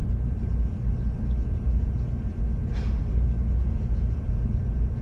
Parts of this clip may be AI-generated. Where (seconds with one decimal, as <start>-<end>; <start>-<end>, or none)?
3.6-4.6